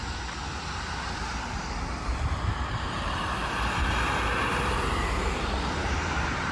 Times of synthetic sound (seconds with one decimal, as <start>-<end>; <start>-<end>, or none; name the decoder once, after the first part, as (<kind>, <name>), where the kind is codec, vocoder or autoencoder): none